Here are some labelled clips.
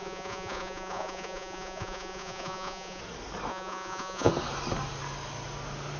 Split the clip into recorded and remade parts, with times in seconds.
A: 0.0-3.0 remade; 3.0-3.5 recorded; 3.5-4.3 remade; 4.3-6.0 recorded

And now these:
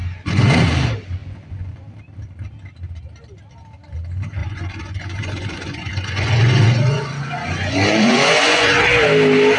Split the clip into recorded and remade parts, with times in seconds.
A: 0.0-0.7 remade; 0.7-1.2 recorded; 1.2-1.7 remade; 1.7-4.4 recorded; 4.4-8.8 remade; 8.8-9.6 recorded

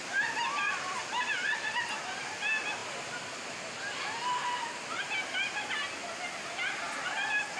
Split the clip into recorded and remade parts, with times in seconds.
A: 0.0-7.6 recorded

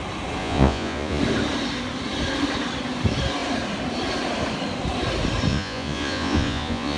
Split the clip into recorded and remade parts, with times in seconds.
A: 0.0-0.4 recorded; 0.4-1.2 remade; 1.2-5.5 recorded; 5.5-7.0 remade

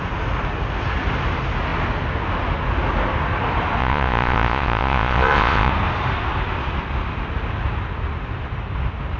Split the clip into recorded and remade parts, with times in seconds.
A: 0.0-3.8 recorded; 3.8-5.7 remade; 5.7-9.2 recorded